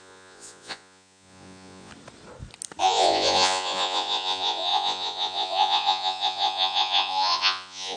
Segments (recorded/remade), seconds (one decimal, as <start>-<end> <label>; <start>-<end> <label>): 0.0-1.9 remade; 1.9-2.8 recorded; 2.8-8.0 remade

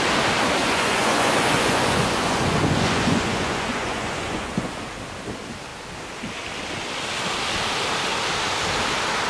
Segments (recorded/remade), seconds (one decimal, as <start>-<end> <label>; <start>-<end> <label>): 0.0-0.6 recorded; 0.6-4.9 remade; 4.9-9.3 recorded

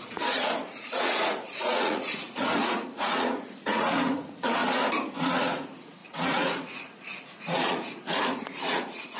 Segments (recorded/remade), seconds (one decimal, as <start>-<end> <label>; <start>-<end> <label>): 0.0-4.6 remade; 4.6-5.2 recorded; 5.2-9.2 remade

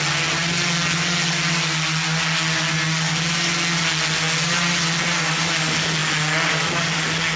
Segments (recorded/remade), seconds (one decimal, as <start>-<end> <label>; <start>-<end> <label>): 0.0-7.4 recorded

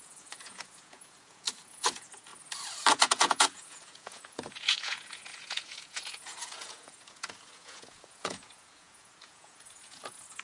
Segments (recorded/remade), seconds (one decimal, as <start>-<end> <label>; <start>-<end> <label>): 0.0-2.3 remade; 2.3-2.9 recorded; 2.9-10.4 remade